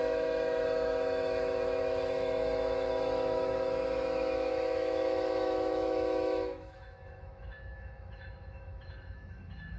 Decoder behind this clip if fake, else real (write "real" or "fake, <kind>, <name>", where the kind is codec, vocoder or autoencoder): fake, autoencoder, DAC-VAE